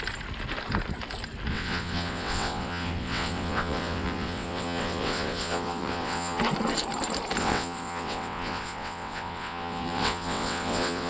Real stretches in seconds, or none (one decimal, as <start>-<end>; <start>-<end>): 0.0-1.5; 6.4-7.4